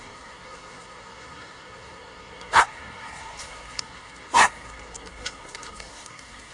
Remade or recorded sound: remade